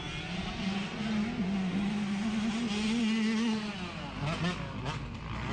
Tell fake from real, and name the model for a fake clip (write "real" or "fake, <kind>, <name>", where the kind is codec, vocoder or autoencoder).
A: real